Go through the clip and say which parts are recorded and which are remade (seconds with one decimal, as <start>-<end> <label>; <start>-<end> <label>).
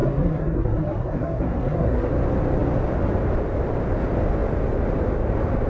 0.0-2.1 remade; 2.1-5.7 recorded